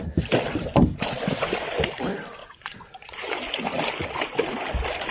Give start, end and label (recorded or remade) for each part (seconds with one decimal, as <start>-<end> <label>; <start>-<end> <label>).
0.0-2.4 recorded; 2.4-3.4 remade; 3.4-5.1 recorded